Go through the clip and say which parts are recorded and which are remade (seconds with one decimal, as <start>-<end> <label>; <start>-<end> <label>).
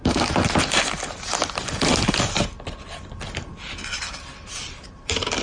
0.0-0.4 remade; 0.4-3.4 recorded; 3.4-5.4 remade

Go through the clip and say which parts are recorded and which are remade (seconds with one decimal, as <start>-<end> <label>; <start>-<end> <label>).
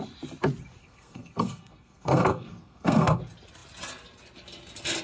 0.0-0.8 recorded; 0.8-3.2 remade; 3.2-5.0 recorded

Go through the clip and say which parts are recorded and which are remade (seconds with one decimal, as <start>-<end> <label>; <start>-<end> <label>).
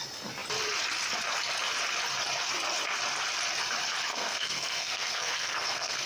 0.0-4.1 recorded; 4.1-6.1 remade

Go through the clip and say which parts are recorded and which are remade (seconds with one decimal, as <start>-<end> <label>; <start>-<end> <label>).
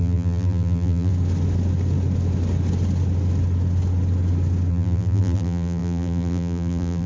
0.0-1.1 remade; 1.1-4.7 recorded; 4.7-7.1 remade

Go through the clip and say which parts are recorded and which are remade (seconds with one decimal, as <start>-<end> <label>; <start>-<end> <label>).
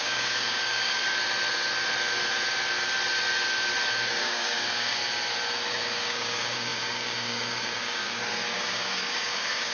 0.0-1.0 remade; 1.0-4.1 recorded; 4.1-5.0 remade; 5.0-5.7 recorded; 5.7-9.7 remade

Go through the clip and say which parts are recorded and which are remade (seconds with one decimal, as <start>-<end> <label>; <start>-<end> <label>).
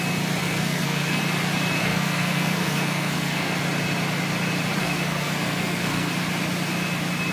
0.0-0.4 recorded; 0.4-1.2 remade; 1.2-1.8 recorded; 1.8-3.6 remade; 3.6-4.8 recorded; 4.8-6.1 remade; 6.1-7.3 recorded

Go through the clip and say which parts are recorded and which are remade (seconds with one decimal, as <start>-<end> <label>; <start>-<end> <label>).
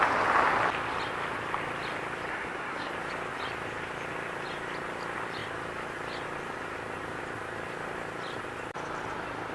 0.0-2.3 recorded; 2.3-2.9 remade; 2.9-9.5 recorded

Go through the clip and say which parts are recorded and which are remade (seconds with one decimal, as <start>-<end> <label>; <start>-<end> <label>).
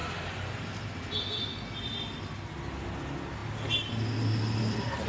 0.0-5.1 recorded